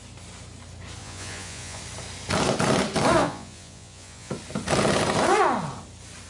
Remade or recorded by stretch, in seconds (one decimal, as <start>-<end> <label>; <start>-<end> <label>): 0.0-1.0 recorded; 1.0-1.8 remade; 1.8-3.2 recorded; 3.2-4.3 remade; 4.3-6.3 recorded